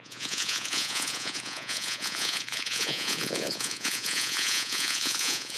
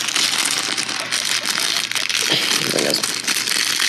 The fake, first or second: first